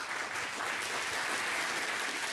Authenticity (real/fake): real